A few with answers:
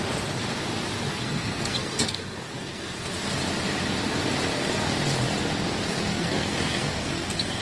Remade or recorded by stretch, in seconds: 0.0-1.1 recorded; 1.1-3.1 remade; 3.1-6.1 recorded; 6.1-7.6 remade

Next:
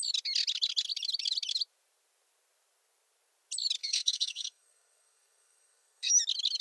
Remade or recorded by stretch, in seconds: 0.0-3.8 recorded; 3.8-6.1 remade; 6.1-6.6 recorded

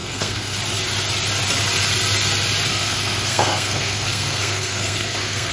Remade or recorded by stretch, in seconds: 0.0-0.6 remade; 0.6-2.7 recorded; 2.7-5.5 remade

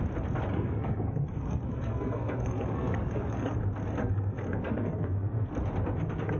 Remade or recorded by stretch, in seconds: 0.0-0.5 recorded; 0.5-3.6 remade; 3.6-4.0 recorded; 4.0-5.5 remade; 5.5-6.4 recorded

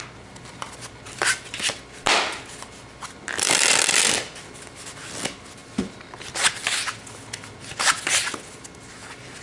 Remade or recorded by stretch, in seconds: 0.0-9.4 recorded

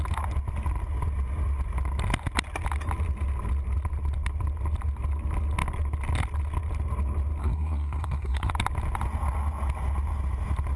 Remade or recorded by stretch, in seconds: 0.0-7.4 recorded; 7.4-8.5 remade; 8.5-10.8 recorded

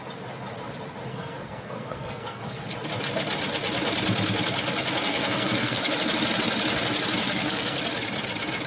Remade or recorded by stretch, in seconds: 0.0-1.1 recorded; 1.1-2.7 remade; 2.7-5.1 recorded; 5.1-5.9 remade; 5.9-7.2 recorded; 7.2-7.8 remade; 7.8-8.7 recorded